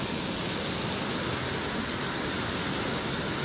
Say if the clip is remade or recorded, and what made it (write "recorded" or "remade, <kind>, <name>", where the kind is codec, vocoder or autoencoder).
recorded